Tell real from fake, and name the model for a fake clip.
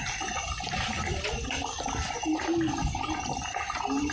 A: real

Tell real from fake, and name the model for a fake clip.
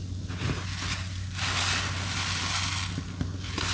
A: real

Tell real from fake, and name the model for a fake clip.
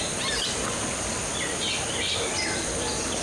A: real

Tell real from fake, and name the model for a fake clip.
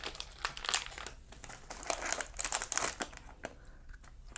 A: real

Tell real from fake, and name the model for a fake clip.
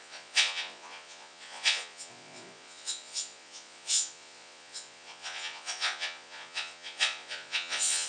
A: fake, vocoder, Vocos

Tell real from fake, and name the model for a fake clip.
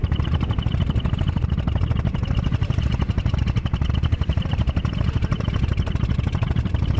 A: fake, vocoder, BigVGAN v2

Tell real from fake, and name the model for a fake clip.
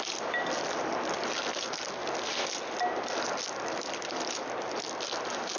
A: real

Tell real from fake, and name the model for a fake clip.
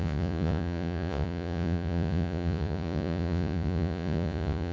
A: fake, vocoder, Vocos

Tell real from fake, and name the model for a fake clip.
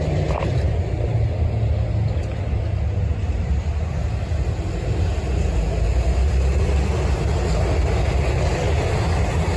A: real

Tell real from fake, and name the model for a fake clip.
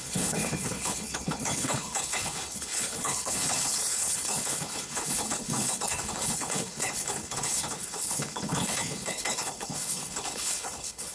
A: fake, codec, HILCodec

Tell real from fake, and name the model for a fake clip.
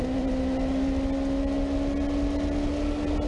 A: real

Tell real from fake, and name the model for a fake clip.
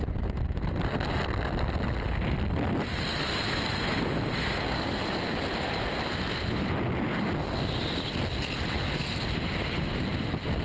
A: real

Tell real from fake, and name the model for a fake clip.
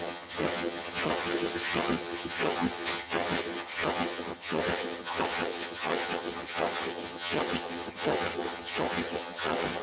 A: fake, vocoder, HiFi-GAN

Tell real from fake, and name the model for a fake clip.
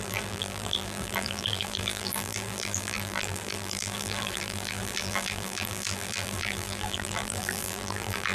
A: fake, vocoder, BigVGAN v2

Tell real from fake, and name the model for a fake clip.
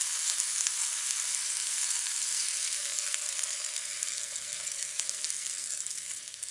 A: fake, codec, SNAC